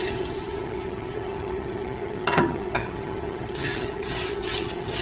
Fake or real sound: fake